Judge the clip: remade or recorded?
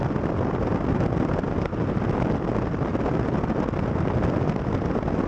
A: recorded